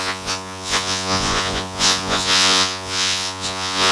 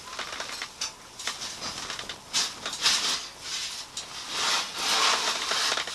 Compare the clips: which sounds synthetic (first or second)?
first